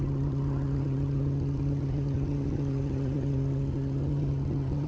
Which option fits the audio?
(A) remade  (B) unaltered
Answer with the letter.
A